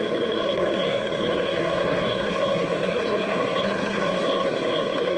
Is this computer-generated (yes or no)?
yes